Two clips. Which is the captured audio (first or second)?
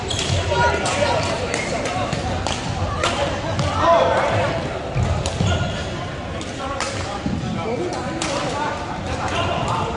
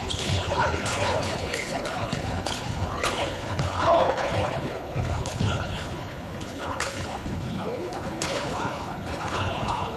first